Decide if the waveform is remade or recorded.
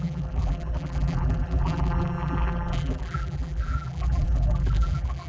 remade